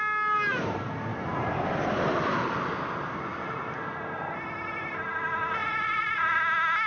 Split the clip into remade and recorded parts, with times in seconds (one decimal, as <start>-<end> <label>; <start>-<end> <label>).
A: 0.0-5.6 recorded; 5.6-6.4 remade; 6.4-6.9 recorded

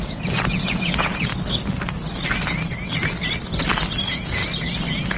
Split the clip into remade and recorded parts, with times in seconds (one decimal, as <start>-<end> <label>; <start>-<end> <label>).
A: 0.0-1.3 remade; 1.3-4.0 recorded; 4.0-4.4 remade; 4.4-5.2 recorded

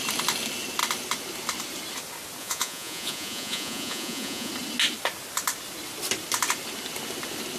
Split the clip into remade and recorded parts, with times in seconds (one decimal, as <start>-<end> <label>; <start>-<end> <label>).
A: 0.0-2.4 recorded; 2.4-4.5 remade; 4.5-7.6 recorded